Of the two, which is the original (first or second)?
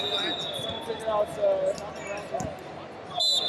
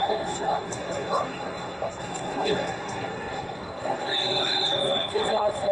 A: first